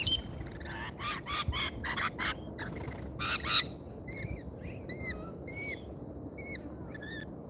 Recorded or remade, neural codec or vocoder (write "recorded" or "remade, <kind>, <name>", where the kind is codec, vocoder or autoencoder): recorded